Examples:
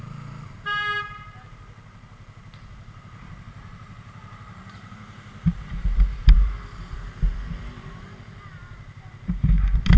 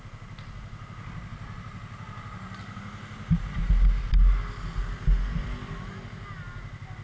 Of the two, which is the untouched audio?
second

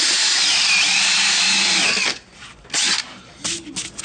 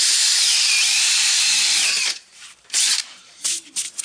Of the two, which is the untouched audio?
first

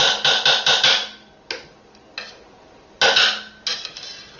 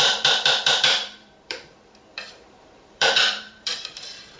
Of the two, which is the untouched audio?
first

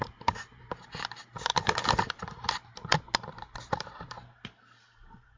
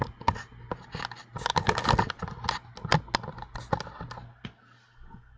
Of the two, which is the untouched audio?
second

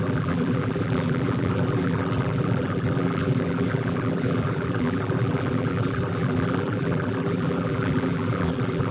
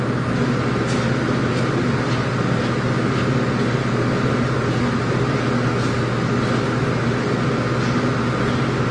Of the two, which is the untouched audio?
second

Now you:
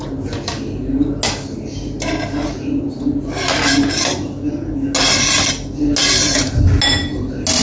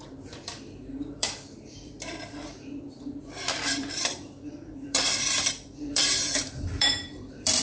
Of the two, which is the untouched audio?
first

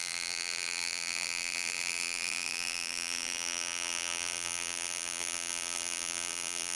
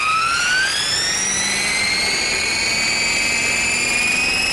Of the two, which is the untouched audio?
second